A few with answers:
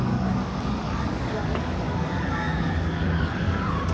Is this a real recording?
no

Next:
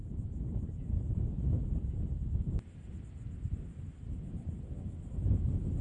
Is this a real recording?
yes